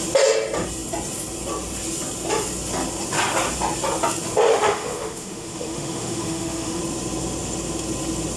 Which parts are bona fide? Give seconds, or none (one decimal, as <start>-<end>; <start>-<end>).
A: 0.0-4.5; 6.8-8.4